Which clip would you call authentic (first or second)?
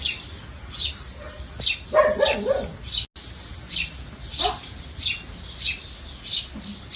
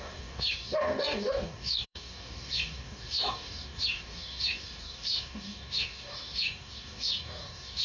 first